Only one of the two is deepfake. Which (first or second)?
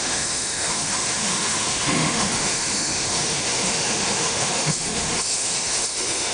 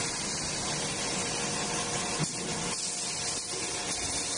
first